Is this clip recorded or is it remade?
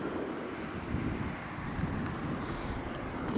remade